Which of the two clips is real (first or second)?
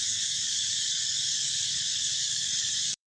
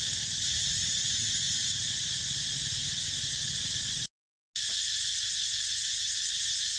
second